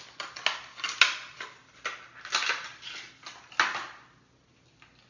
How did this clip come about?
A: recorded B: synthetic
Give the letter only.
A